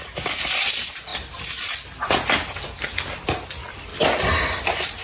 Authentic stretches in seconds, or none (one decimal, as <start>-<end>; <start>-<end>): 0.0-5.0